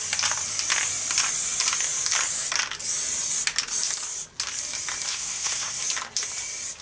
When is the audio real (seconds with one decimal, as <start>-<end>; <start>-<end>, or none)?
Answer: 0.0-5.1; 5.8-6.8